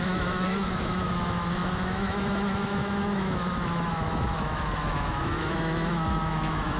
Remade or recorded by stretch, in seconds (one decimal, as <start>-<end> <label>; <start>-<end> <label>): 0.0-6.8 remade